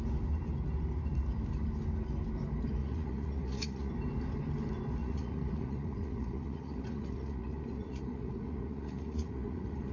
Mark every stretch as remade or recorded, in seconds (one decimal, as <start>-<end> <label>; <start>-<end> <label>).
0.0-2.8 recorded; 2.8-3.9 remade; 3.9-5.0 recorded; 5.0-9.9 remade